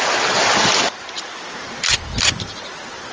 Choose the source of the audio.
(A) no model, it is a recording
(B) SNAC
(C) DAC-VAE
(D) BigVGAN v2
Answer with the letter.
D